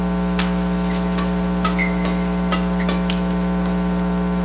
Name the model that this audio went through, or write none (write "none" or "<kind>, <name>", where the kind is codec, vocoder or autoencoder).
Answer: none